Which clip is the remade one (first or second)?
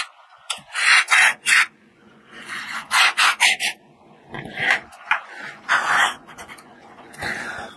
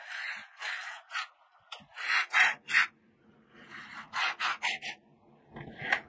first